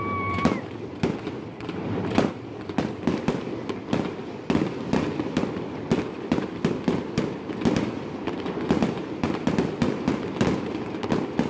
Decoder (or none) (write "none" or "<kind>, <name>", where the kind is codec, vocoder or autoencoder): none